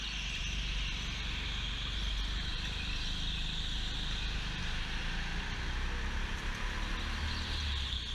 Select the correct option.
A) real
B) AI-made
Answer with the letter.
A